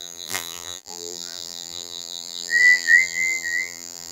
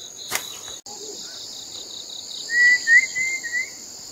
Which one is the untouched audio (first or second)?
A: second